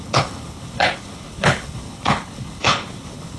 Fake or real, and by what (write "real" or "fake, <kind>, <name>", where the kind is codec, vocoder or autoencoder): fake, codec, HILCodec